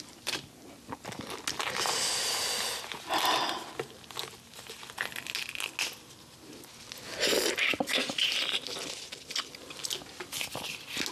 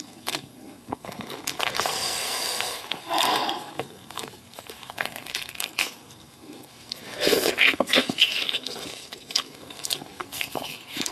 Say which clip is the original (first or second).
first